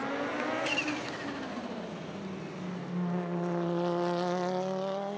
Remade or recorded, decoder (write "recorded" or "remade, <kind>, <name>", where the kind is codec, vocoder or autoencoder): recorded